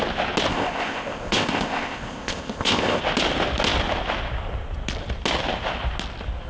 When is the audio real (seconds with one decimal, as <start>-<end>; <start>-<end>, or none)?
0.0-0.5; 3.0-6.5